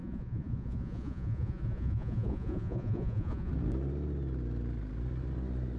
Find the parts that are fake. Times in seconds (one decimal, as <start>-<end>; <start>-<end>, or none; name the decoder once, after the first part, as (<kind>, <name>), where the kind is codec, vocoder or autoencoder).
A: 0.0-3.5 (vocoder, Vocos)